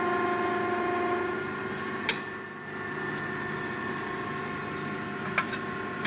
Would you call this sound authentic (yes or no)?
yes